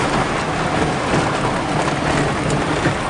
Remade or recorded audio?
recorded